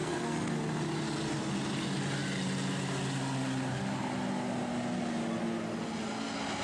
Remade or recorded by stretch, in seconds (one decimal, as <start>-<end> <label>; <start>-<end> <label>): 0.0-0.6 remade; 0.6-6.6 recorded